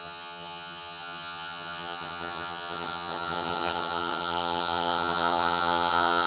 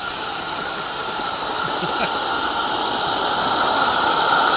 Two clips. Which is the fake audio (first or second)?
first